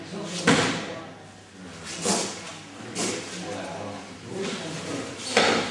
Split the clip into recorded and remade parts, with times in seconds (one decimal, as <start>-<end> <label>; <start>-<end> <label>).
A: 0.0-5.7 recorded